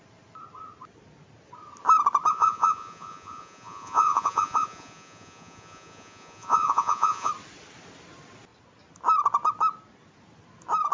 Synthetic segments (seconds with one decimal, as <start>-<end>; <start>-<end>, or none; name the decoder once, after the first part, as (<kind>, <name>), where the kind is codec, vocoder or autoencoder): 2.3-7.3 (vocoder, Vocos)